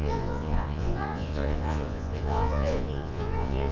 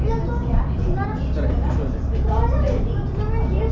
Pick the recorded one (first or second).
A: second